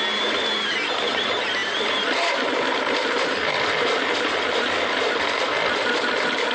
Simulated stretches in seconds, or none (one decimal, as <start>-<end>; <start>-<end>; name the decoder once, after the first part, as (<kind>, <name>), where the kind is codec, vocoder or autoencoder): none